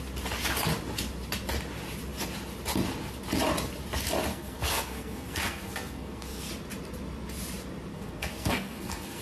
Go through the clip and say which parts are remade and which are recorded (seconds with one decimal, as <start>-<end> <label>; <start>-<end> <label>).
0.0-4.3 recorded; 4.3-6.5 remade; 6.5-7.9 recorded; 7.9-9.2 remade